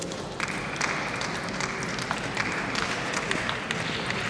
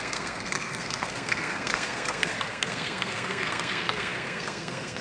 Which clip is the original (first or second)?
first